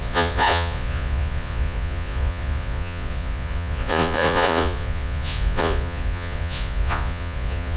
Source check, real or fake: fake